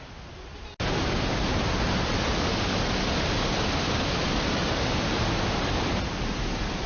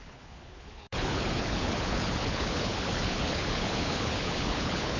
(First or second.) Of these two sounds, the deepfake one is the second